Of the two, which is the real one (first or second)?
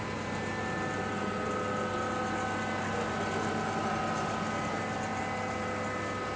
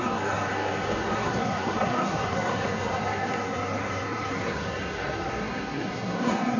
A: first